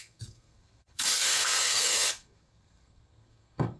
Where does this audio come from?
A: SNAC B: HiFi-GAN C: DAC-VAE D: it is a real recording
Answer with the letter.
A